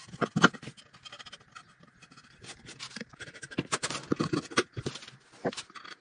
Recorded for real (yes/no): yes